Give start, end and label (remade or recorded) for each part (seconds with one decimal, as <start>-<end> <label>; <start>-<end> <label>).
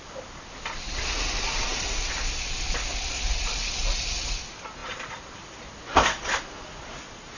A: 0.0-7.4 recorded